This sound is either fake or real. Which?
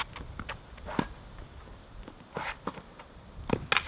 real